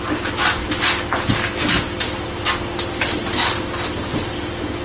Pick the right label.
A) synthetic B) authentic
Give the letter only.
B